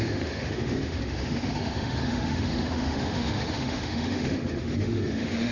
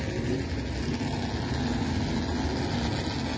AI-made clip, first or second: first